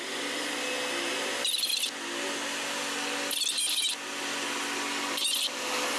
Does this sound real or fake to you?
real